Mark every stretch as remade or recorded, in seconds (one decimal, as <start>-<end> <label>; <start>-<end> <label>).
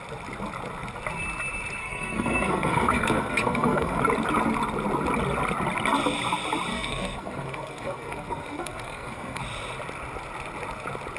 0.0-1.8 recorded; 1.8-4.0 remade; 4.0-6.7 recorded; 6.7-9.4 remade; 9.4-11.2 recorded